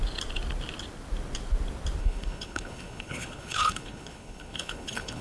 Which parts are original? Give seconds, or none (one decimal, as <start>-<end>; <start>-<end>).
0.0-2.0